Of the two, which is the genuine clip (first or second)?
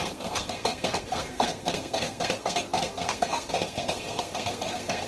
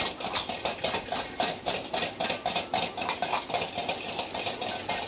second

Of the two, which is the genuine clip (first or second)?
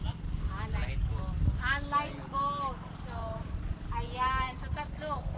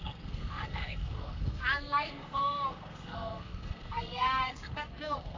first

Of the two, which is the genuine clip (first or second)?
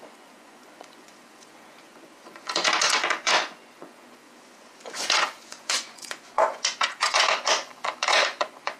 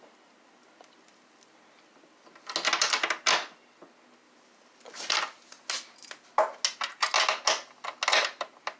second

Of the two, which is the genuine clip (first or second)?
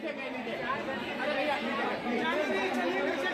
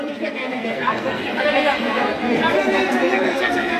first